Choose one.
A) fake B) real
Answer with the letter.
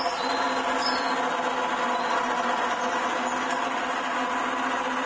B